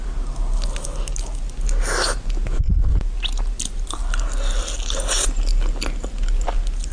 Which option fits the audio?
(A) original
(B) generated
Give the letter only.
A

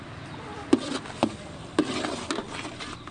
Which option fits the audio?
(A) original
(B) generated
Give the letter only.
A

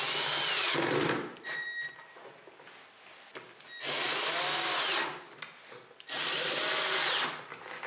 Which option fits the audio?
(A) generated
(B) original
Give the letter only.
B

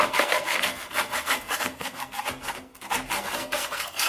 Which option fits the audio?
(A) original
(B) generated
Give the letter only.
B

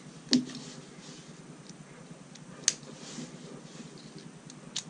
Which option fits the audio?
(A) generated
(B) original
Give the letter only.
B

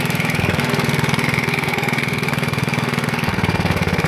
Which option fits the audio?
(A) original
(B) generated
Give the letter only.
B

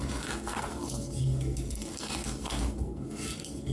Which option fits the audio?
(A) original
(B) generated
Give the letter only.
B